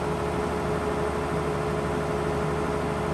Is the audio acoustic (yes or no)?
yes